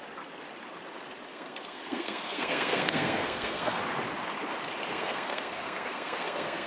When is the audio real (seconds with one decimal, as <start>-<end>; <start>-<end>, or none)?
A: 0.0-1.3; 3.8-4.9